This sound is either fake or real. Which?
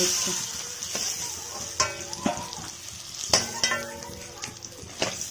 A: real